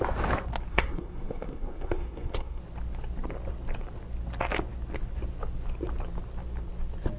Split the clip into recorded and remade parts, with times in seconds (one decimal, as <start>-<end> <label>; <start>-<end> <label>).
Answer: 0.0-0.7 recorded; 0.7-2.6 remade; 2.6-7.2 recorded